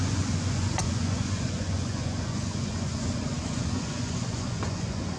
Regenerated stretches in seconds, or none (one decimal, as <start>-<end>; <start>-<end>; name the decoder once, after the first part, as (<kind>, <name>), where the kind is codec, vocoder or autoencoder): 0.0-5.2 (vocoder, Vocos)